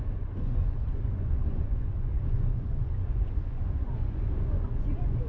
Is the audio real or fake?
fake